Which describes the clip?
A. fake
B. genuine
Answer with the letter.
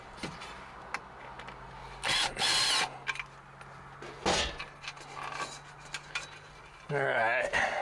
B